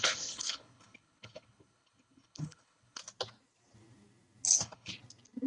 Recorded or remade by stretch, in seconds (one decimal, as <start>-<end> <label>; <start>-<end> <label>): 0.0-3.0 remade; 3.0-4.5 recorded; 4.5-4.9 remade; 4.9-5.5 recorded